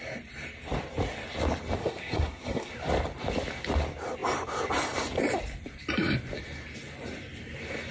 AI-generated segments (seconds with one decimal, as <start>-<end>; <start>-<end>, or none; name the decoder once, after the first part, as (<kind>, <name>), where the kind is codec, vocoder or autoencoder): 1.8-2.7 (codec, SNAC)